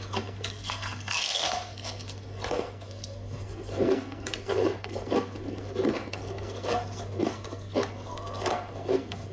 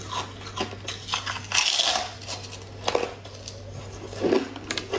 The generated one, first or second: first